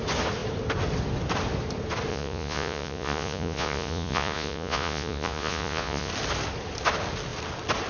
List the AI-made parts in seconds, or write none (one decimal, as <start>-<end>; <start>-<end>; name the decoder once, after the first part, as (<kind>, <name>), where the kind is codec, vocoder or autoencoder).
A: 2.1-6.1 (vocoder, Vocos)